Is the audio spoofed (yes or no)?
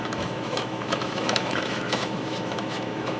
yes